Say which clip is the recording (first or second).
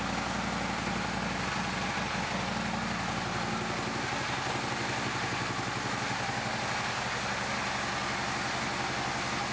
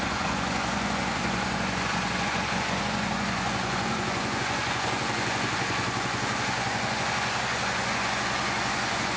first